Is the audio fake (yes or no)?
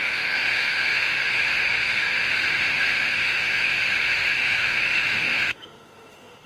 yes